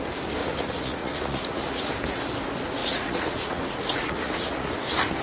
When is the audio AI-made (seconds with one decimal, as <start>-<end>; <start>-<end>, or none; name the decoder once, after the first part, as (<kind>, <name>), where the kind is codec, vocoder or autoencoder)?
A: 0.4-1.9 (vocoder, Vocos); 2.8-4.7